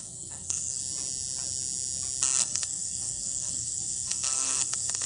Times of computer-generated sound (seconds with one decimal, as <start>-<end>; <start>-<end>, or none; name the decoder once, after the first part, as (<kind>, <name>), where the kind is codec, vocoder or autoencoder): 0.0-0.8 (codec, SNAC); 2.4-5.1